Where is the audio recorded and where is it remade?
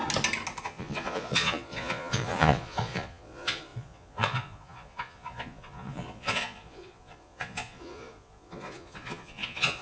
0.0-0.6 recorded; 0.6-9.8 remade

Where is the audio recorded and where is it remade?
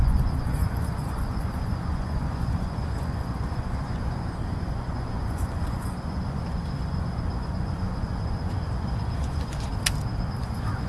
0.0-9.7 remade; 9.7-10.4 recorded; 10.4-10.9 remade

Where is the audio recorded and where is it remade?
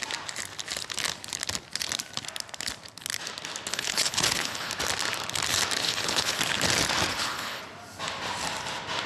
0.0-3.7 recorded; 3.7-4.7 remade; 4.7-5.8 recorded; 5.8-6.4 remade; 6.4-7.1 recorded; 7.1-7.6 remade; 7.6-9.1 recorded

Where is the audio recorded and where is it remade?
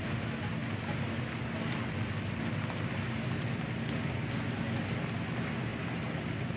0.0-6.6 recorded